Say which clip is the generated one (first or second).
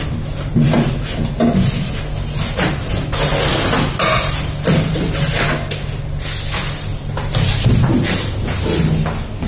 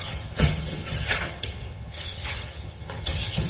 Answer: second